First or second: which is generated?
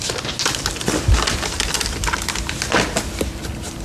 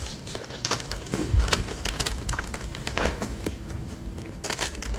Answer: second